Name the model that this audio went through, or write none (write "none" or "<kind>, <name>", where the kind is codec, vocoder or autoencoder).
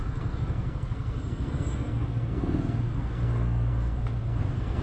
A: codec, SNAC